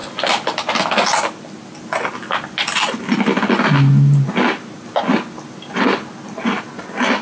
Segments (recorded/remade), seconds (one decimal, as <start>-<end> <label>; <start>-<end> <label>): 0.0-7.2 recorded